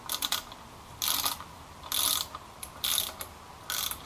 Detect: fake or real real